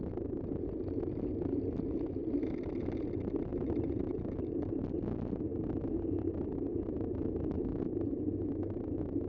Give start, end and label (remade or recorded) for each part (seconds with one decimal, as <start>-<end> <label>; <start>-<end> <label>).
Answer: 0.0-3.5 recorded; 3.5-4.8 remade; 4.8-7.7 recorded; 7.7-8.3 remade; 8.3-9.3 recorded